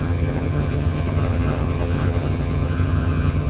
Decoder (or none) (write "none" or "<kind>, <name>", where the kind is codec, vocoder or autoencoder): vocoder, HiFi-GAN